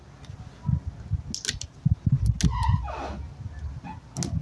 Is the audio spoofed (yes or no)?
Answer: no